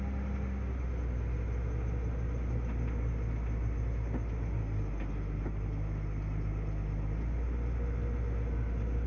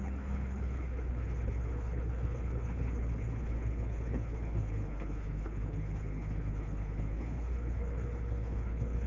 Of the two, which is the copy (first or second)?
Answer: second